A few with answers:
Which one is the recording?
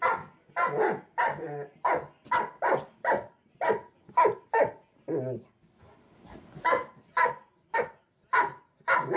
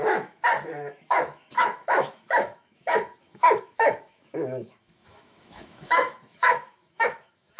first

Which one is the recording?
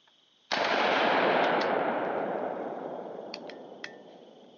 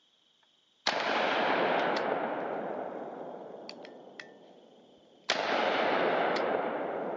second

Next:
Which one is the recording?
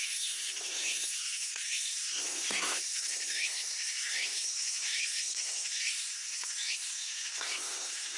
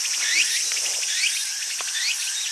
second